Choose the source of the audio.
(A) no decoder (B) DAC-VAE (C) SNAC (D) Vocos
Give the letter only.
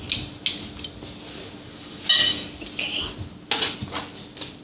A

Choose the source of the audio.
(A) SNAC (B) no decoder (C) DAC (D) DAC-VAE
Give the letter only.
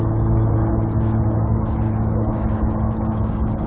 C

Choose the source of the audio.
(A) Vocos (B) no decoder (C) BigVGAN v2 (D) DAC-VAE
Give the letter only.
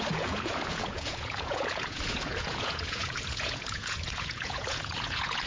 A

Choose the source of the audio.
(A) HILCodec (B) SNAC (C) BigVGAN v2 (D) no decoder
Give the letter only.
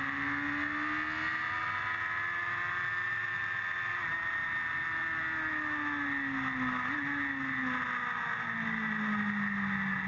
D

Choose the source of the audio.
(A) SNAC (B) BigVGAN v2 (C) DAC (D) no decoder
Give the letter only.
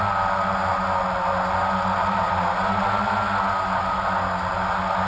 D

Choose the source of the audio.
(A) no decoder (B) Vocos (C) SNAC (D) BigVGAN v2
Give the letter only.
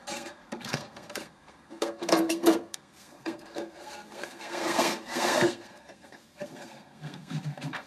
C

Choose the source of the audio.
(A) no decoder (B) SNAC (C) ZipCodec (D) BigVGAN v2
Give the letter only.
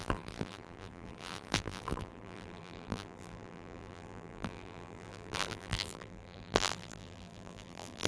D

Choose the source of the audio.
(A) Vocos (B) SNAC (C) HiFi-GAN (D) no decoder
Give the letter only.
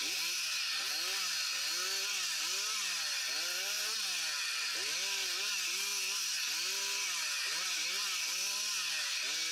D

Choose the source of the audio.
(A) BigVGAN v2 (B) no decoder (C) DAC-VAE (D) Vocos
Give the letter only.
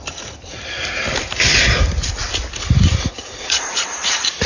A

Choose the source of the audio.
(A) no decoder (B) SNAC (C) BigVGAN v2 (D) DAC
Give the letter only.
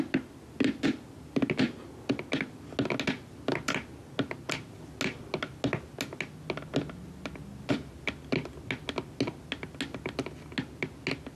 A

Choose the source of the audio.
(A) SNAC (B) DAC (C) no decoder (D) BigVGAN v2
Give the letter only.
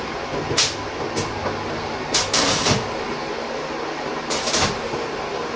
D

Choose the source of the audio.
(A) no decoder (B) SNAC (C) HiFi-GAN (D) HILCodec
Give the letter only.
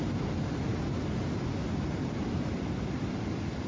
A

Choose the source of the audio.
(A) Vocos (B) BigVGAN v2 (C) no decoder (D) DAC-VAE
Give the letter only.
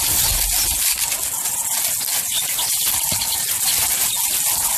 C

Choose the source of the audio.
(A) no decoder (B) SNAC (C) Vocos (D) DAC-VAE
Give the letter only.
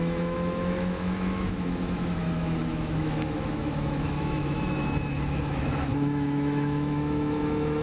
D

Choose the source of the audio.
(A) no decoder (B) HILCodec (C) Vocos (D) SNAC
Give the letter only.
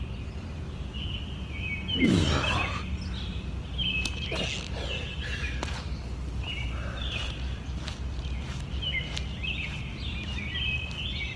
A